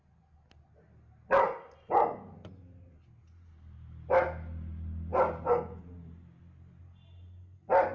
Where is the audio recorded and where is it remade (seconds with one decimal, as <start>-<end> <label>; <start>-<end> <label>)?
0.0-7.9 recorded